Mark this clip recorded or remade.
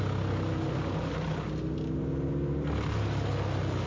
recorded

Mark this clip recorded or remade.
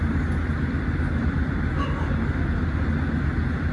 recorded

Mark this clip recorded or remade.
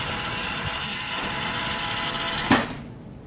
recorded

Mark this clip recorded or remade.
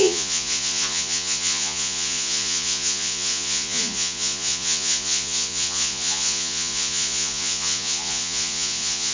remade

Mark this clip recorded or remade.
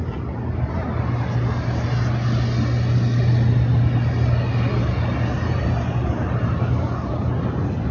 recorded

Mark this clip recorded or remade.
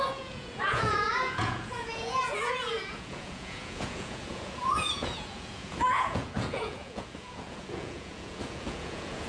remade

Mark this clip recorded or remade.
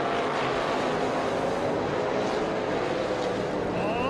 recorded